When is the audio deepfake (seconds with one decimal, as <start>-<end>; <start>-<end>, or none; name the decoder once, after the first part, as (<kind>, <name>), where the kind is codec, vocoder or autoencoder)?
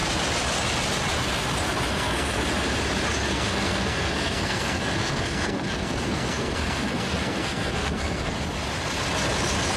1.9-2.4 (codec, SNAC); 3.2-8.3